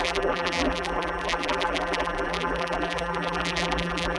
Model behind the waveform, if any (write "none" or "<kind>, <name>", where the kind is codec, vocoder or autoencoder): vocoder, BigVGAN v2